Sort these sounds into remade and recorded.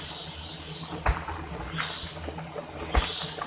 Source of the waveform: recorded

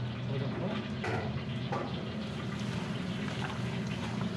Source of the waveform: recorded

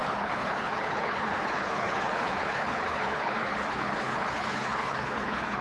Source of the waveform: remade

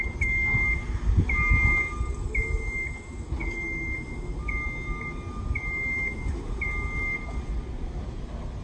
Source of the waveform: recorded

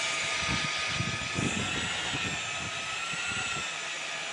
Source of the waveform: recorded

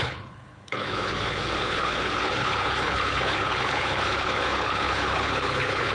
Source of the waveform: remade